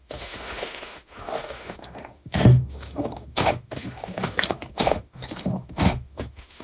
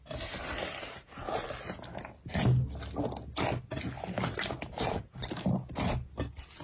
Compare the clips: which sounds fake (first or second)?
first